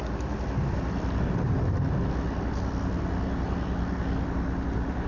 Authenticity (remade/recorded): recorded